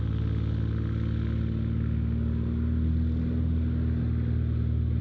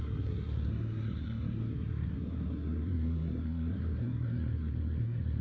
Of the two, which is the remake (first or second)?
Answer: second